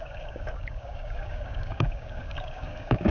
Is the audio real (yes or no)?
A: no